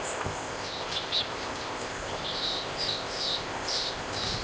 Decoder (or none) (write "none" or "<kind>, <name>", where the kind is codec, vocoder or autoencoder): codec, ZipCodec